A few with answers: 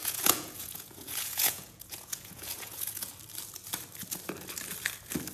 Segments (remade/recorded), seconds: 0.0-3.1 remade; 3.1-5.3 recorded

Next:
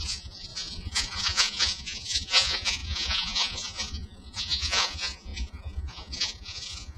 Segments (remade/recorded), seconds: 0.0-7.0 remade